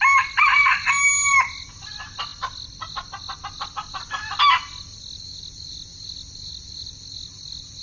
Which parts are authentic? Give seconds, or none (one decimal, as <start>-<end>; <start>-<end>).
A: 0.0-7.8